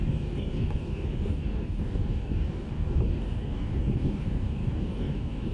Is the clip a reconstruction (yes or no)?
yes